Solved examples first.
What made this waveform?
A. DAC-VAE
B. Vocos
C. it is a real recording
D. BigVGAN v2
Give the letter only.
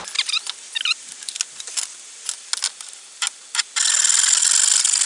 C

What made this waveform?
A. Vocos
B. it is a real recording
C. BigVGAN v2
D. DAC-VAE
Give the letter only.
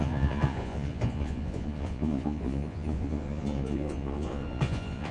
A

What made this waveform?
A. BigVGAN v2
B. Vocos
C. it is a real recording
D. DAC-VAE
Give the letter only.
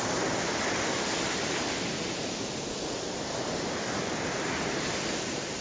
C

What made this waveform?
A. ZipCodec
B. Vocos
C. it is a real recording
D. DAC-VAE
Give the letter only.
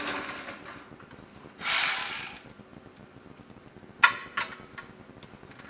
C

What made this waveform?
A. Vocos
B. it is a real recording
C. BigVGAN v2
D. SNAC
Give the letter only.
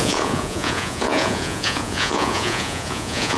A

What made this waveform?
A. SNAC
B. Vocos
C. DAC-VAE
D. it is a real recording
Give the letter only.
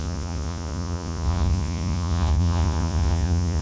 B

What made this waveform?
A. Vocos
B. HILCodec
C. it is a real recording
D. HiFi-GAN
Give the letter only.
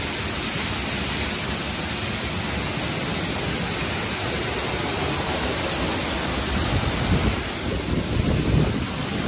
C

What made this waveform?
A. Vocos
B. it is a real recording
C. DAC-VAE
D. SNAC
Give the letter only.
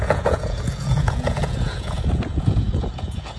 A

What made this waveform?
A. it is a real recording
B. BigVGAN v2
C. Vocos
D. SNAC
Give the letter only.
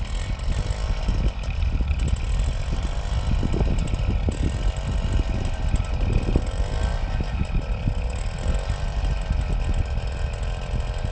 A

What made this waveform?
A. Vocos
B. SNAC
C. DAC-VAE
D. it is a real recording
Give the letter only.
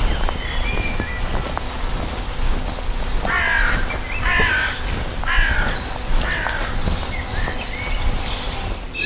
D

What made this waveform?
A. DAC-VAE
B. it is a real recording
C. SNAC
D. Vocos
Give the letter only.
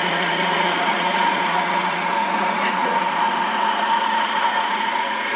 D